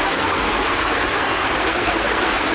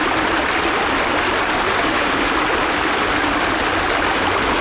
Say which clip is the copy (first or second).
first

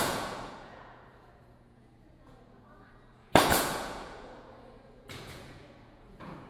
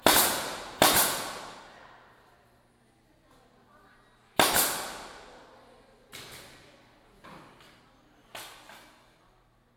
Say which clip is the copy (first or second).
first